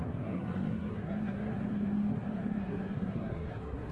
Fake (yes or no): yes